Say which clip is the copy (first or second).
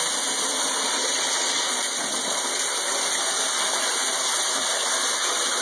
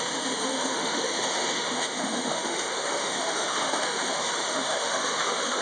second